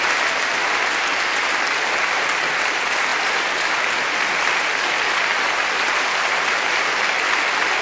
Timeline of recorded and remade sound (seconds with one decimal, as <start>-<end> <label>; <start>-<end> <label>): 0.0-3.1 recorded; 3.1-5.0 remade; 5.0-7.8 recorded

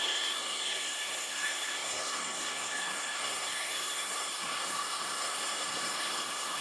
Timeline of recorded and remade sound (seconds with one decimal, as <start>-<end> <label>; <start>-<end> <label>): 0.0-6.6 remade

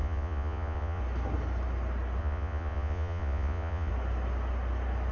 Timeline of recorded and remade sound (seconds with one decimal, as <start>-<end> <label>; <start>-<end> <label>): 0.0-1.0 remade; 1.0-2.2 recorded; 2.2-3.9 remade; 3.9-5.1 recorded

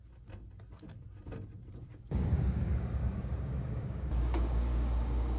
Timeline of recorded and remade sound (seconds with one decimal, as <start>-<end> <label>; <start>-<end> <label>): 0.0-1.9 recorded; 1.9-5.4 remade

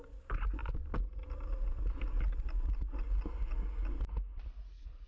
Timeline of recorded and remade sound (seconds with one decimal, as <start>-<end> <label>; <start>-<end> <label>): 0.0-5.1 recorded

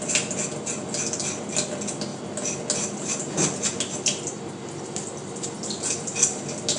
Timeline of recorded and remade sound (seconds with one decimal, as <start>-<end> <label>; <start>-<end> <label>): 0.0-6.8 recorded